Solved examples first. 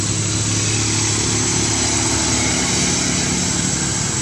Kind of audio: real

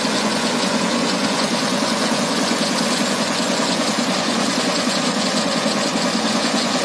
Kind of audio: fake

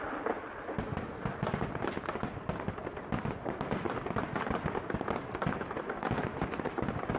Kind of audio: real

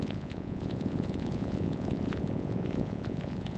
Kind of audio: fake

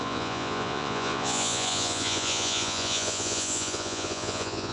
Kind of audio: fake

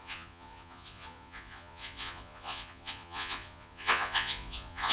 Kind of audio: fake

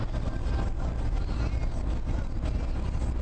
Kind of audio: real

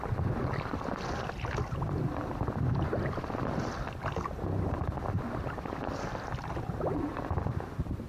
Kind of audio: real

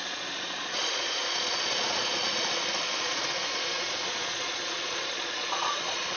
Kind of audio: fake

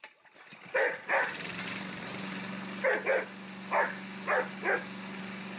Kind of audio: real